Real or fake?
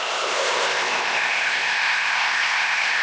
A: fake